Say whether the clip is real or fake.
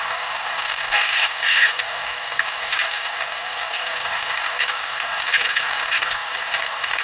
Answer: fake